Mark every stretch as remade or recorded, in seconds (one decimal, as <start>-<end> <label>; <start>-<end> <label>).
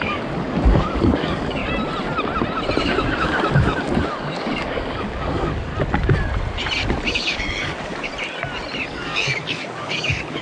0.0-1.6 remade; 1.6-2.8 recorded; 2.8-5.7 remade; 5.7-7.1 recorded; 7.1-8.1 remade; 8.1-8.9 recorded; 8.9-10.4 remade